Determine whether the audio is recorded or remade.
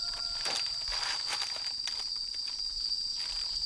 recorded